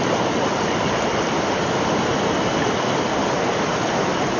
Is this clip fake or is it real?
real